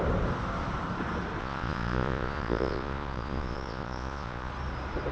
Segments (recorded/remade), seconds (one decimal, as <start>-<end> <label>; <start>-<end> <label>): 0.0-1.4 recorded; 1.4-4.5 remade; 4.5-5.1 recorded